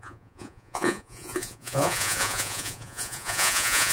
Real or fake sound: fake